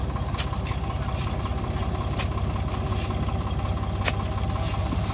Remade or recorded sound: recorded